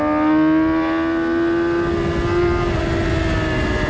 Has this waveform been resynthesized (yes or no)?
no